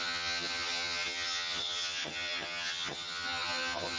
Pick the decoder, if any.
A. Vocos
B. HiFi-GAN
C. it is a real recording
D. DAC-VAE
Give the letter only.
B